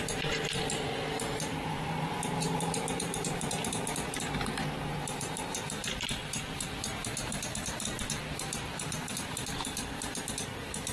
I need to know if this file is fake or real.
fake